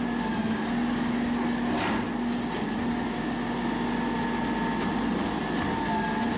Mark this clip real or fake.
real